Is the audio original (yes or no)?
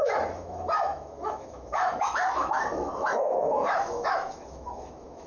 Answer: no